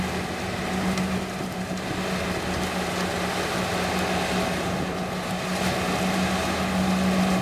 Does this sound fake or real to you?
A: real